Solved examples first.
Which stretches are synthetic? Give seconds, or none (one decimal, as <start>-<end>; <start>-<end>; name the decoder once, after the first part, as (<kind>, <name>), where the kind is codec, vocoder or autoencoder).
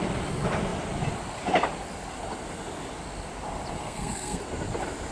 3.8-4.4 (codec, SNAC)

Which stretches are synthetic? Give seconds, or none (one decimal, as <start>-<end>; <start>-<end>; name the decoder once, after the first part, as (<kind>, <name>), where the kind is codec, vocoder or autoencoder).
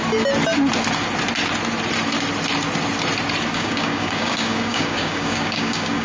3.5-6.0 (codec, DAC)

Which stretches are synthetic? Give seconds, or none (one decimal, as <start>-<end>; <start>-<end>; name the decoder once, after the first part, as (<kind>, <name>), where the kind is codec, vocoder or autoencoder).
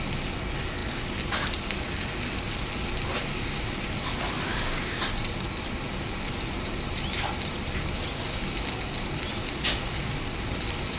4.5-5.0 (codec, DAC)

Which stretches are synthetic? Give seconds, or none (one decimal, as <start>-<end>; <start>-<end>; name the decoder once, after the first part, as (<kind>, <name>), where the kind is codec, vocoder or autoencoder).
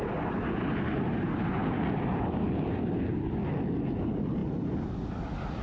none